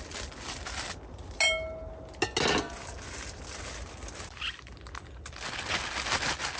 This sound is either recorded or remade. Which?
recorded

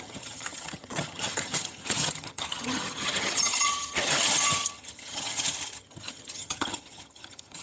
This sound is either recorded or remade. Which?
remade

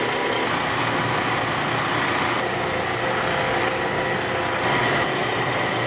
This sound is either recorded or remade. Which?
recorded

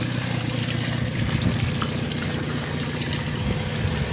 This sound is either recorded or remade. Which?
recorded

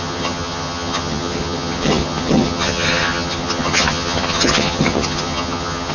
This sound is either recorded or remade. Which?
remade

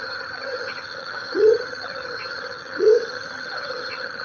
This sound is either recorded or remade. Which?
remade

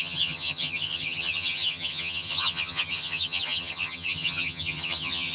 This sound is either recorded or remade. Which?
remade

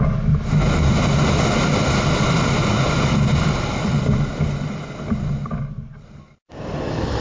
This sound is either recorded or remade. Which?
recorded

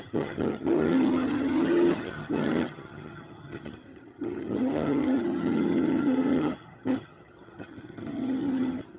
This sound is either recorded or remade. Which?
remade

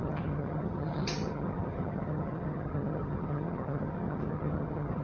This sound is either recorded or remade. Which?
remade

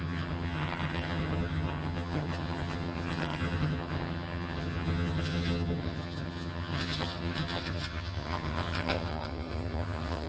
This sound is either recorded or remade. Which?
remade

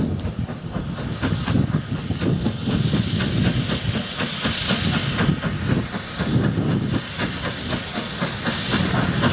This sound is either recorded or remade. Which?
recorded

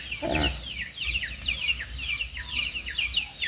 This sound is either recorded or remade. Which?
recorded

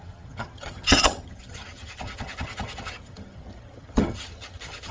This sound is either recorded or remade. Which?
remade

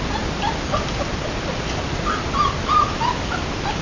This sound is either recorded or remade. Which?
recorded